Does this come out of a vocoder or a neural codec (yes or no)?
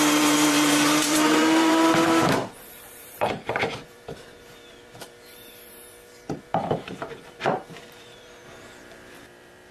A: yes